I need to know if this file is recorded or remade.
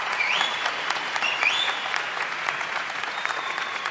remade